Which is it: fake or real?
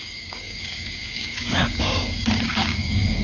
fake